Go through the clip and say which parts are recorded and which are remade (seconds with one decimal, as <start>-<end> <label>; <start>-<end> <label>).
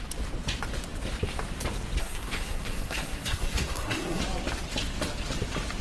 0.0-2.0 recorded; 2.0-4.2 remade; 4.2-5.8 recorded